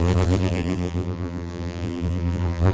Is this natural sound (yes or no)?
no